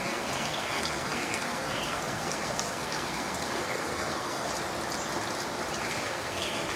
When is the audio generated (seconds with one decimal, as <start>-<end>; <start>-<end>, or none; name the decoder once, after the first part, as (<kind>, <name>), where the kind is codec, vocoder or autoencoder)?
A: 0.0-4.5 (codec, SNAC); 5.8-6.8